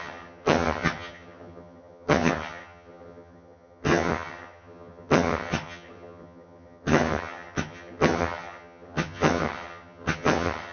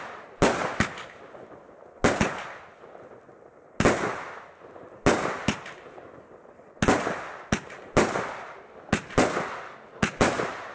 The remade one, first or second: first